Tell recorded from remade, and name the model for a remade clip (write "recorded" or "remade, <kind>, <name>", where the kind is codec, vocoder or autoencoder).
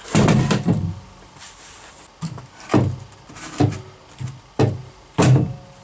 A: recorded